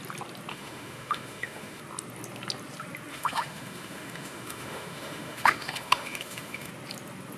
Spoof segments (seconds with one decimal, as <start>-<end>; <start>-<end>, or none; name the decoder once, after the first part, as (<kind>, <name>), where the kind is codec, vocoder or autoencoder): 0.5-1.8 (autoencoder, DAC-VAE); 3.1-6.7